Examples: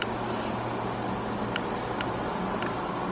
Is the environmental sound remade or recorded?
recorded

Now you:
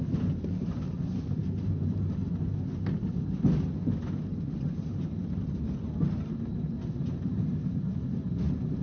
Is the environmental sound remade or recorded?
recorded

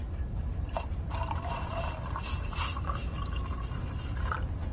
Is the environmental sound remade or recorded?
recorded